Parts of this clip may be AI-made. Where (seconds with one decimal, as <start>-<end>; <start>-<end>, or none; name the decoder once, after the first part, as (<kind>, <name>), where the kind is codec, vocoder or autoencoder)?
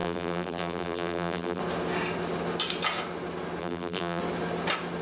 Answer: 0.0-1.6 (vocoder, BigVGAN v2); 3.6-4.2